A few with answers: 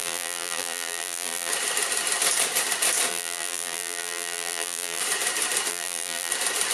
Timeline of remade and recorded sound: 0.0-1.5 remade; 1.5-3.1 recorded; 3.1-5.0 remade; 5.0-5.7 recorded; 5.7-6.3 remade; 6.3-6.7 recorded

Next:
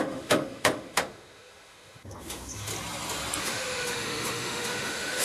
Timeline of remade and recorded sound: 0.0-2.7 remade; 2.7-3.4 recorded; 3.4-5.2 remade

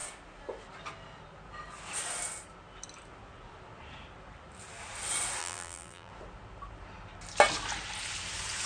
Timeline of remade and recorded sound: 0.0-5.4 recorded; 5.4-6.1 remade; 6.1-8.7 recorded